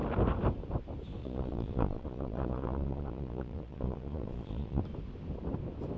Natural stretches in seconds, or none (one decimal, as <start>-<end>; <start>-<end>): 0.0-1.2; 4.8-6.0